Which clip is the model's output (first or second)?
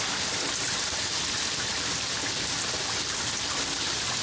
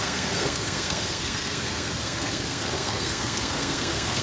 second